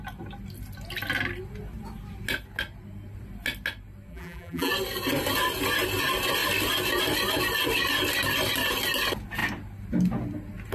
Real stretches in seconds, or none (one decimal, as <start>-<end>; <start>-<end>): 0.0-4.1; 4.7-10.7